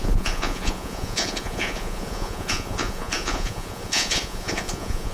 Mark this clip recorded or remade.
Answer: remade